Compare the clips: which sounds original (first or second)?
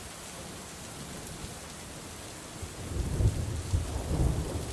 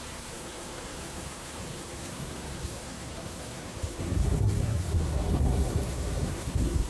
first